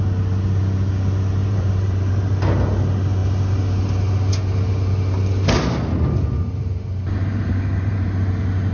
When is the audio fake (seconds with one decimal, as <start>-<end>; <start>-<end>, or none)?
1.4-2.1; 7.3-8.0